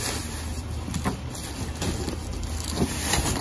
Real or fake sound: real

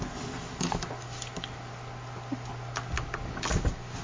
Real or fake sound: real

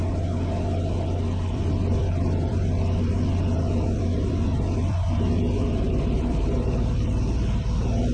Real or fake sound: fake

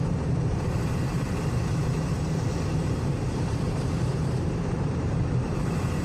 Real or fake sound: fake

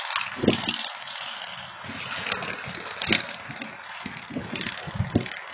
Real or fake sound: real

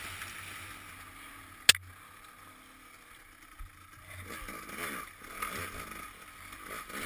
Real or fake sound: real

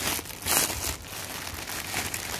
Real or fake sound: real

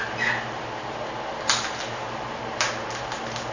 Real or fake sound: real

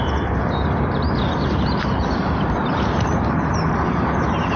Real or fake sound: fake